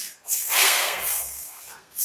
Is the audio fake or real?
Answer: fake